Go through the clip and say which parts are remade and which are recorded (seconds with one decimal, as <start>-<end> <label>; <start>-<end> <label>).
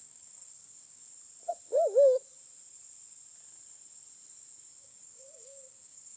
0.0-1.0 remade; 1.0-4.7 recorded; 4.7-6.2 remade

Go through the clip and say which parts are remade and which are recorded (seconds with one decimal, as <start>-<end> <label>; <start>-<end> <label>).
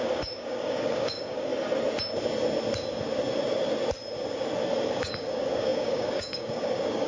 0.0-1.5 remade; 1.5-4.9 recorded; 4.9-7.1 remade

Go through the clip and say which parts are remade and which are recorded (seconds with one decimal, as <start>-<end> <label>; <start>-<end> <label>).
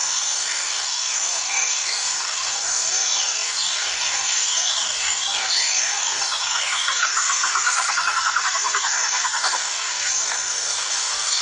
0.0-11.4 remade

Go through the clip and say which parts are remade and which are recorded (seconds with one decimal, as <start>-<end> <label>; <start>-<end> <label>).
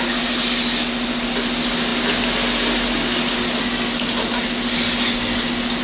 0.0-5.8 recorded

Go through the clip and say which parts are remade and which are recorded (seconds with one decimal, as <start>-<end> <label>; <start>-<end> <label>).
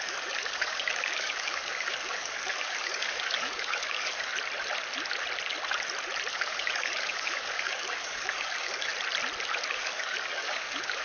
0.0-4.3 remade; 4.3-6.3 recorded; 6.3-8.9 remade; 8.9-9.7 recorded; 9.7-11.0 remade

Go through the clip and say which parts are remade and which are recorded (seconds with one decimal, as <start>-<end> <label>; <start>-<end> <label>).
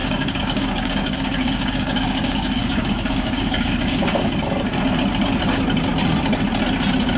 0.0-4.3 remade; 4.3-7.2 recorded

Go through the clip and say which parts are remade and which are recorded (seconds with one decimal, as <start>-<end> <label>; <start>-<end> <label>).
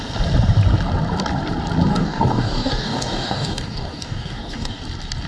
0.0-1.9 recorded; 1.9-4.8 remade; 4.8-5.3 recorded